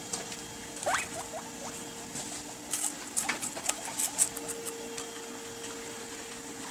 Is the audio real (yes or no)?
yes